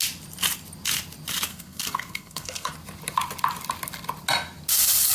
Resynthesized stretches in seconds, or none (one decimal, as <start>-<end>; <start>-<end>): 1.5-2.7